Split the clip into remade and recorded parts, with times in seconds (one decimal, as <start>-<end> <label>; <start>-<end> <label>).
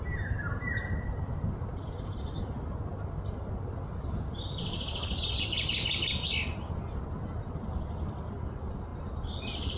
0.0-9.8 recorded